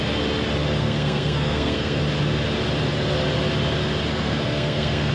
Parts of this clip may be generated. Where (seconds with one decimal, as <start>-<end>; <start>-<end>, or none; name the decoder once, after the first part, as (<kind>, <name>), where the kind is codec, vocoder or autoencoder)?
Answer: 0.8-2.0 (codec, SNAC); 4.1-5.1